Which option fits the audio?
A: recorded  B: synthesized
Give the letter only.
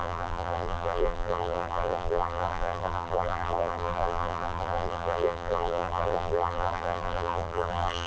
B